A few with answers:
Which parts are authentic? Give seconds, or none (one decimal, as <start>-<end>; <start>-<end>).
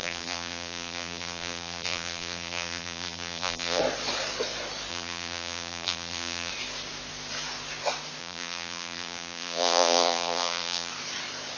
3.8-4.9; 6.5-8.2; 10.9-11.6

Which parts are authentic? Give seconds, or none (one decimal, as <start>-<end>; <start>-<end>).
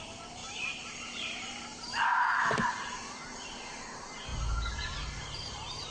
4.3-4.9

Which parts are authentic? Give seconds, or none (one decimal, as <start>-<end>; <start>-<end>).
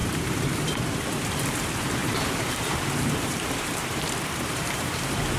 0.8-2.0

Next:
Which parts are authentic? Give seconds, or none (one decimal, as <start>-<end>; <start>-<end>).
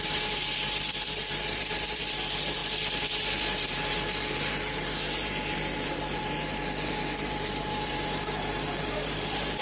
none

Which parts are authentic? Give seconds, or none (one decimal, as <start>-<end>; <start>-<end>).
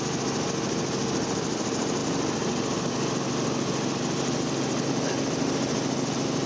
0.0-6.5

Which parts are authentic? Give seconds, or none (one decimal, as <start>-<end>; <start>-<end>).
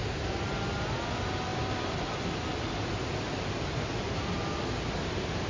0.0-5.5